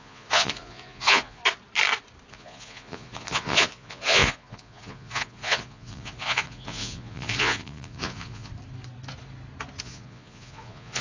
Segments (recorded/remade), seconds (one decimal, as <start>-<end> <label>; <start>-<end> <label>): 0.0-1.4 remade; 1.4-2.3 recorded; 2.3-8.5 remade; 8.5-9.8 recorded; 9.8-11.0 remade